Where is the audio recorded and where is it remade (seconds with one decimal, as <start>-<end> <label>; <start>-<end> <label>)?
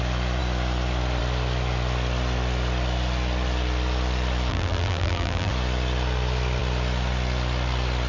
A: 0.0-4.5 recorded; 4.5-5.5 remade; 5.5-8.1 recorded